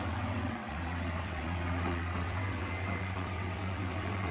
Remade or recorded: remade